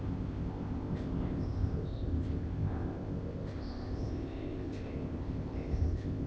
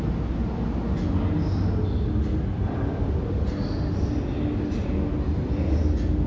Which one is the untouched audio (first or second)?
second